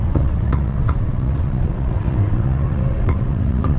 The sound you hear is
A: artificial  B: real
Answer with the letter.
A